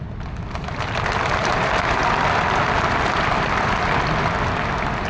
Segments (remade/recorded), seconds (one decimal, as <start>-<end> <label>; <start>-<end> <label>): 0.0-5.1 recorded